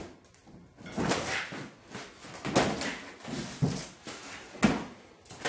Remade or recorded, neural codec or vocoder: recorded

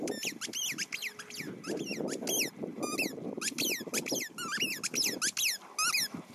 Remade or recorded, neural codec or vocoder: recorded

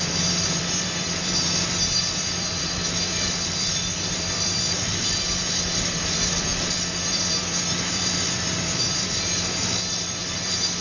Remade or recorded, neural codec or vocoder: remade, vocoder, BigVGAN v2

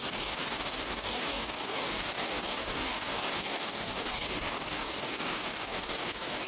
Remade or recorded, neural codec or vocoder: remade, codec, DAC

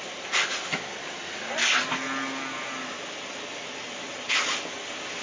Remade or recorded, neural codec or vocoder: recorded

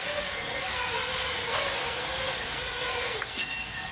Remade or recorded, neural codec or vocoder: remade, codec, SNAC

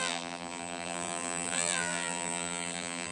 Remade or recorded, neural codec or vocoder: remade, vocoder, BigVGAN v2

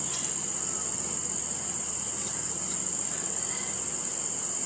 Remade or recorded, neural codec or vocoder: recorded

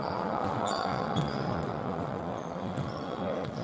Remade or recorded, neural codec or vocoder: remade, vocoder, WaveNeXt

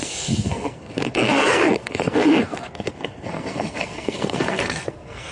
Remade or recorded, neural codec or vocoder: remade, codec, SNAC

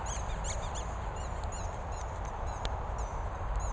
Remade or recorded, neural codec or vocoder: recorded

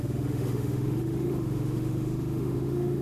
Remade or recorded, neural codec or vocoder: remade, autoencoder, DAC-VAE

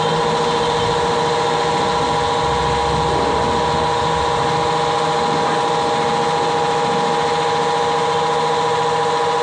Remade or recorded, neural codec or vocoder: recorded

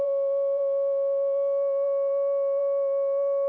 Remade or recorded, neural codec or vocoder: remade, vocoder, BigVGAN v2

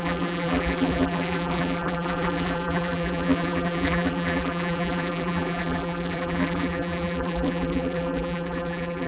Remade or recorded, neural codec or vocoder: remade, vocoder, BigVGAN v2